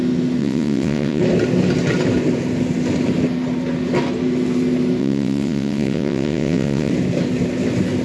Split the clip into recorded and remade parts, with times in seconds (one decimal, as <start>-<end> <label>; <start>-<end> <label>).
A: 0.0-0.4 recorded; 0.4-1.2 remade; 1.2-5.0 recorded; 5.0-6.9 remade; 6.9-8.0 recorded

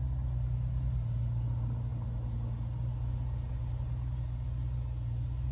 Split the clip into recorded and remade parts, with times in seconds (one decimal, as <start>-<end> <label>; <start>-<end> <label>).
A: 0.0-5.5 recorded